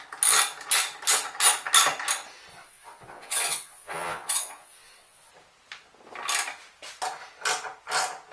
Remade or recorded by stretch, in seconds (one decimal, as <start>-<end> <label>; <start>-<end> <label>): 0.0-2.5 recorded; 2.5-5.3 remade; 5.3-8.3 recorded